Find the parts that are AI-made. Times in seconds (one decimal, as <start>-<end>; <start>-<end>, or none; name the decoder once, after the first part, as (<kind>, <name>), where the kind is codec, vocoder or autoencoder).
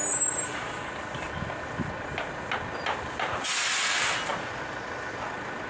none